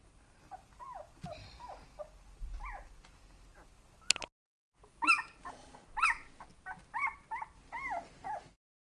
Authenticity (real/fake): real